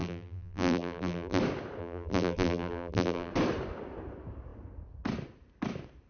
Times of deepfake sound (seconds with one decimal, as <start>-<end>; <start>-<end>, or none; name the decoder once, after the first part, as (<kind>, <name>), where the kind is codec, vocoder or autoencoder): 0.0-1.4 (vocoder, BigVGAN v2); 1.8-3.3